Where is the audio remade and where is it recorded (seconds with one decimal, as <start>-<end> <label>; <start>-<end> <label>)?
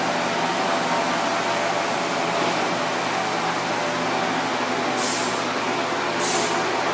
0.0-6.9 recorded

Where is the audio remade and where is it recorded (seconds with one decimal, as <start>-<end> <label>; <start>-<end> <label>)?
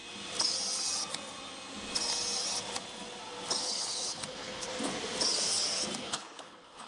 0.0-3.6 recorded; 3.6-4.7 remade; 4.7-6.0 recorded; 6.0-6.9 remade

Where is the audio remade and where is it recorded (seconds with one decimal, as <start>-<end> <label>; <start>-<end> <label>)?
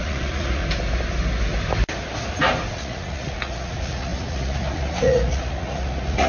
0.0-0.6 remade; 0.6-2.7 recorded; 2.7-6.3 remade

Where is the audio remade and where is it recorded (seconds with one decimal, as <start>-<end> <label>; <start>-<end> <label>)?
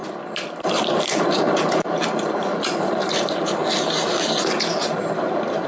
0.0-0.6 recorded; 0.6-3.6 remade; 3.6-4.4 recorded; 4.4-5.7 remade